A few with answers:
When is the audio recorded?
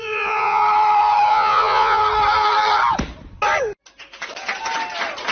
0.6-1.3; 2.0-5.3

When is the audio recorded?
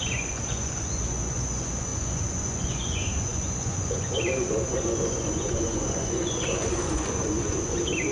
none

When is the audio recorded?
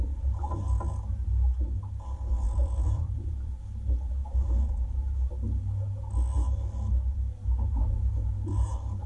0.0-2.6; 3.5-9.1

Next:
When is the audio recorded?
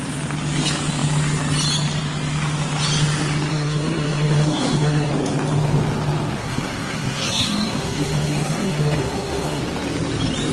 0.0-3.5; 5.1-6.4; 9.6-10.5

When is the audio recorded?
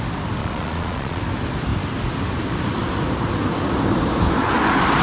0.0-0.4; 1.2-5.0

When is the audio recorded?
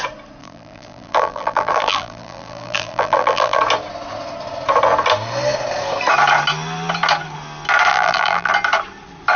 0.0-0.4; 3.6-7.9; 8.5-9.4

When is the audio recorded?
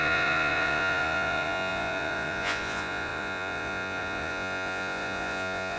none